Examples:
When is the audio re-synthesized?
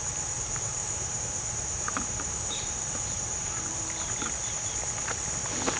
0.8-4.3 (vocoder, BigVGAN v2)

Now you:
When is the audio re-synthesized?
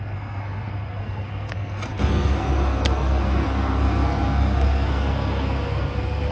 0.0-6.3 (codec, SNAC)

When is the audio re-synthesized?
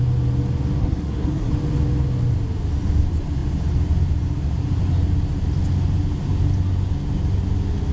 0.8-1.5 (codec, SNAC)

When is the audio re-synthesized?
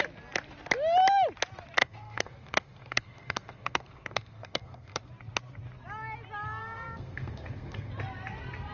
1.8-5.1 (codec, SNAC); 6.6-7.9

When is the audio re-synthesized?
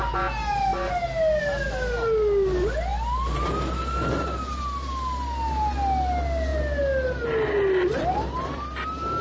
none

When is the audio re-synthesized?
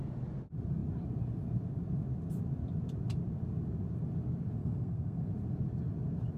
4.6-5.3 (codec, SNAC)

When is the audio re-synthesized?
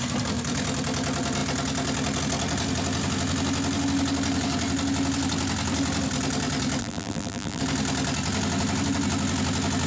6.8-7.6 (vocoder, BigVGAN v2)